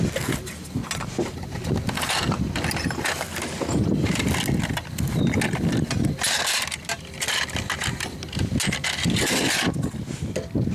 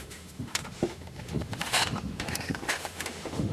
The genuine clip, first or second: first